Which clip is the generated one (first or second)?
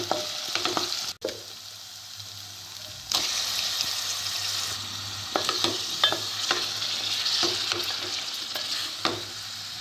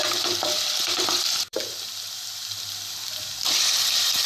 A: second